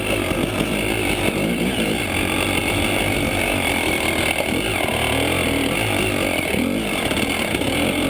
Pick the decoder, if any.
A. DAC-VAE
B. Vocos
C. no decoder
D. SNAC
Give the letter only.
C